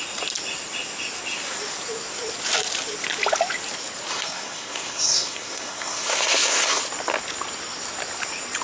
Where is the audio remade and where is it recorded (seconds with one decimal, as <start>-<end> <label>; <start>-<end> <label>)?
0.0-4.1 recorded; 4.1-6.8 remade; 6.8-8.6 recorded